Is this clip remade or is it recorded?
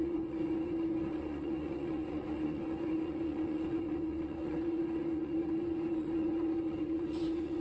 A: remade